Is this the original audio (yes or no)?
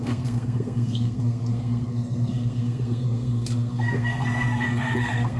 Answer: no